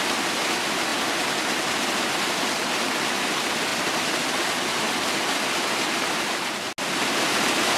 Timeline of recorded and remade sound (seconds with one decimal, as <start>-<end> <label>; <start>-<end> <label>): 0.0-7.8 recorded